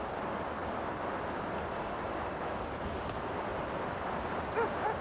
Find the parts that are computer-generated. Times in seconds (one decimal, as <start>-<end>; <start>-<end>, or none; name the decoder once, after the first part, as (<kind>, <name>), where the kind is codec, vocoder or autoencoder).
none